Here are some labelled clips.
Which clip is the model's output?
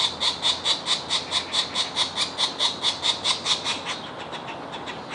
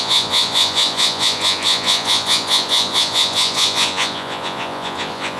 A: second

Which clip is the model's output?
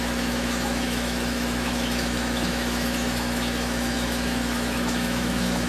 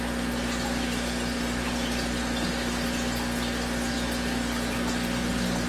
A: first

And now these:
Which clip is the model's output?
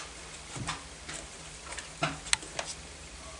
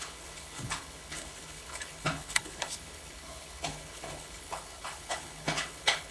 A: second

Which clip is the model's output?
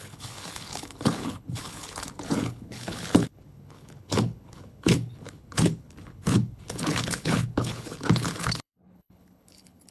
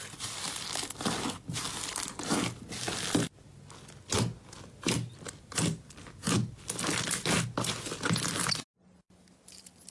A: first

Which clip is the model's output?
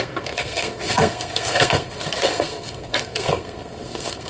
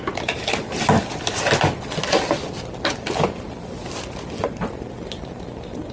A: first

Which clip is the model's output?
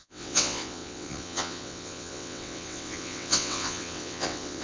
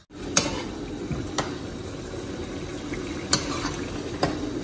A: first